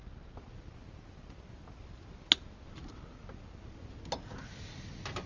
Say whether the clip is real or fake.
real